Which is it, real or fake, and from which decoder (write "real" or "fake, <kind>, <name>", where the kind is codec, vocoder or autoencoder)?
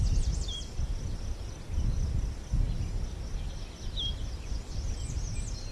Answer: real